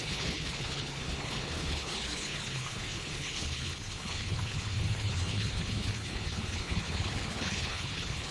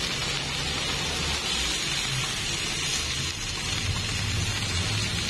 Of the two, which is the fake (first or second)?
first